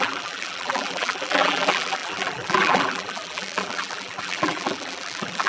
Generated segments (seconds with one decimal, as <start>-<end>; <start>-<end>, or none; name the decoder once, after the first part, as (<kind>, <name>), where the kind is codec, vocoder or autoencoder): 0.0-5.5 (vocoder, BigVGAN v2)